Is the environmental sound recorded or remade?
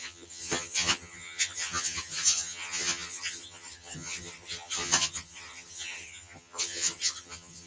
remade